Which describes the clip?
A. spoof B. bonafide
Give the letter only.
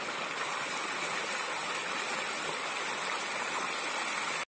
B